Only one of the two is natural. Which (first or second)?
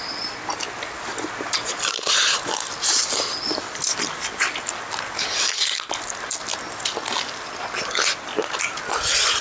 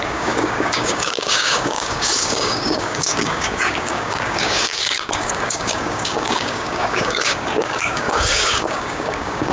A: first